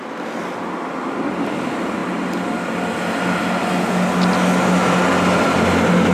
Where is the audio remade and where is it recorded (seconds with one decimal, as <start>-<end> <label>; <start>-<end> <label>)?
0.0-6.1 recorded